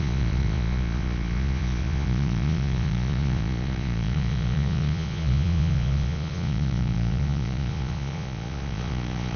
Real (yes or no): no